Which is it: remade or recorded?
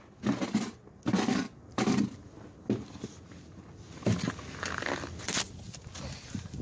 recorded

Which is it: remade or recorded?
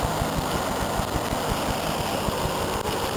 recorded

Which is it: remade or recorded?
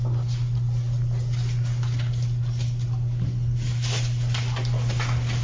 recorded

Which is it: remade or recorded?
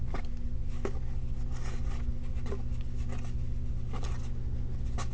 recorded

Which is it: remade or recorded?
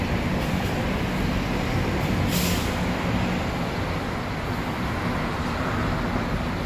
recorded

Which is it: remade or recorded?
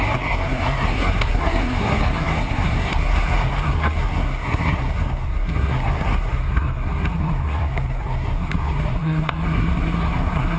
remade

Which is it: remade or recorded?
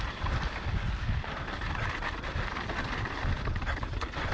recorded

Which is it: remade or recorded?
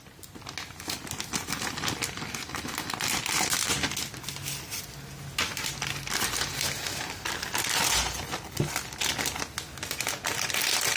recorded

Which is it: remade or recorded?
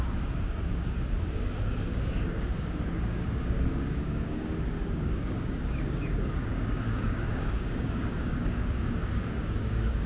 remade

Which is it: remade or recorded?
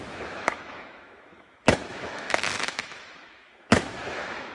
remade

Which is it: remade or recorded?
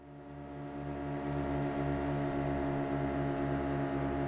recorded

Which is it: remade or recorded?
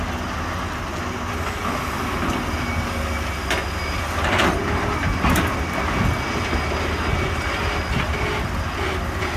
recorded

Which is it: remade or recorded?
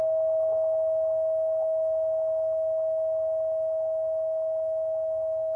remade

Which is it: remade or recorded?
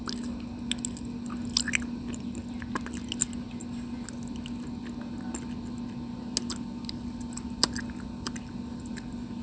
recorded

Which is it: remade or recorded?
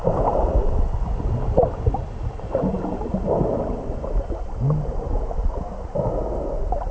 recorded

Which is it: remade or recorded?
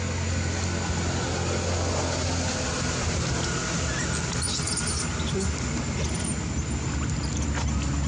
recorded